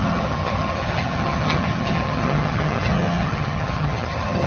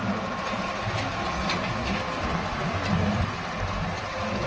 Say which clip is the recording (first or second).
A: second